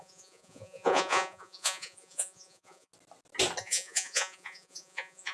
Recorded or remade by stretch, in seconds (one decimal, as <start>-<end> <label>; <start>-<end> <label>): 0.0-2.9 remade; 2.9-3.6 recorded; 3.6-5.3 remade